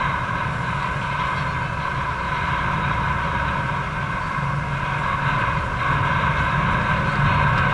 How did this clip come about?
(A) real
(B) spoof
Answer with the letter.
A